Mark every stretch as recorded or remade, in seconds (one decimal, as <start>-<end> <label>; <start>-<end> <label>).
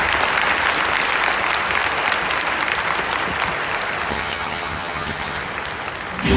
0.0-4.1 recorded; 4.1-5.4 remade; 5.4-6.4 recorded